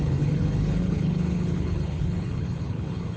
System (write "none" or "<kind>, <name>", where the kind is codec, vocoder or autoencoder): codec, HILCodec